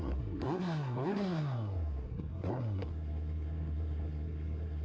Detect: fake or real fake